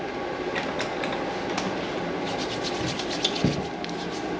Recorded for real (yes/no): yes